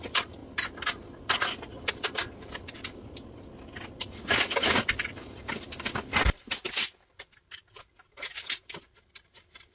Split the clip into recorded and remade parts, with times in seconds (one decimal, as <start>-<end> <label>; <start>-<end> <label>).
0.0-9.7 recorded

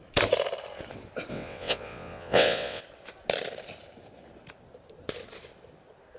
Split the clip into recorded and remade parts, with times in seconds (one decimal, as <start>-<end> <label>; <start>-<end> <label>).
0.0-1.3 recorded; 1.3-2.8 remade; 2.8-6.2 recorded

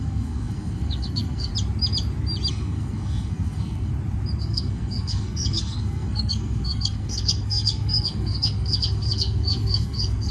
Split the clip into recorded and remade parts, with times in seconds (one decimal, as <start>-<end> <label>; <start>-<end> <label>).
0.0-1.5 remade; 1.5-2.5 recorded; 2.5-3.9 remade; 3.9-4.4 recorded; 4.4-10.3 remade

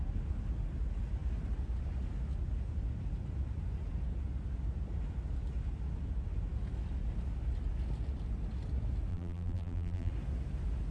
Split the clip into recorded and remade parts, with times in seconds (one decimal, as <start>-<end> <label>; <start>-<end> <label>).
0.0-9.1 recorded; 9.1-10.1 remade; 10.1-10.9 recorded

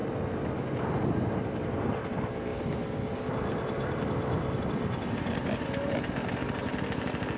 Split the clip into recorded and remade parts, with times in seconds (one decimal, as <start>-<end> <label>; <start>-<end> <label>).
0.0-7.4 recorded

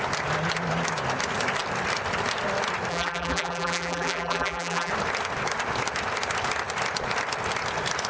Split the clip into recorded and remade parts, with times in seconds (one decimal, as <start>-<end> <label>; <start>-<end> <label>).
0.0-2.9 recorded; 2.9-4.9 remade; 4.9-8.1 recorded